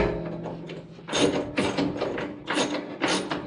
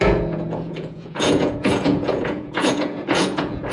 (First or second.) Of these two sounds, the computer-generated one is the second